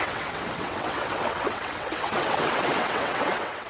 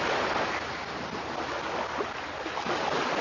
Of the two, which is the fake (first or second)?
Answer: first